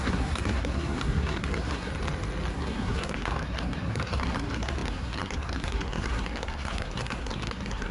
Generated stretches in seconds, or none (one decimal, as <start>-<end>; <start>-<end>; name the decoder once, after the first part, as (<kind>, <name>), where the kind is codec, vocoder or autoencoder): 0.0-1.9 (codec, SNAC); 2.5-7.9